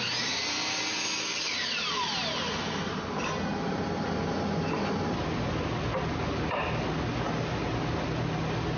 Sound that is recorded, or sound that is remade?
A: recorded